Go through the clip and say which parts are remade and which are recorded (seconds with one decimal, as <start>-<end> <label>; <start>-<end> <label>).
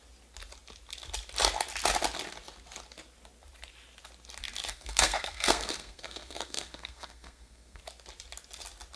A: 0.0-4.7 recorded; 4.7-7.8 remade; 7.8-9.0 recorded